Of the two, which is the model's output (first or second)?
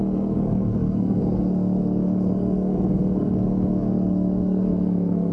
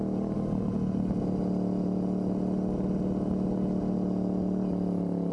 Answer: first